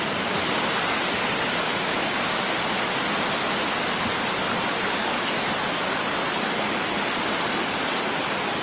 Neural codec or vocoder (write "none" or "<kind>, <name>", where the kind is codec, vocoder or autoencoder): none